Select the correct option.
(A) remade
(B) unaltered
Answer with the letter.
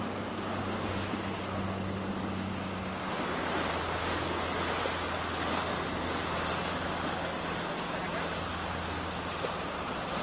B